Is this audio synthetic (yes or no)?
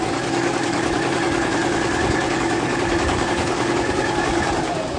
yes